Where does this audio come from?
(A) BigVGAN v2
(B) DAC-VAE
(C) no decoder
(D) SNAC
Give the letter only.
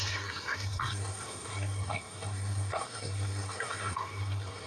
D